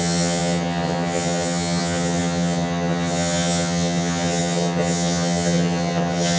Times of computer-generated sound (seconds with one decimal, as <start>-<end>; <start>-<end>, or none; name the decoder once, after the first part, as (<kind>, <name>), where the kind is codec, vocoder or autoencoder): 0.0-6.4 (vocoder, HiFi-GAN)